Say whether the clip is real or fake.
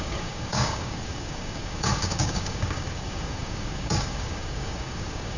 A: fake